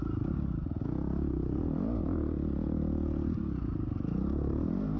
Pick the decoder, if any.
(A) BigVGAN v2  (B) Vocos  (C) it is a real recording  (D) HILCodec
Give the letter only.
C